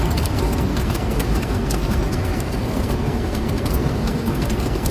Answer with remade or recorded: remade